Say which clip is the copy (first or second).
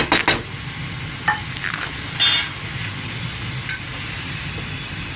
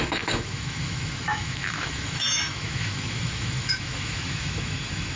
second